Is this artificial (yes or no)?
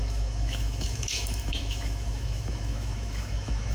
yes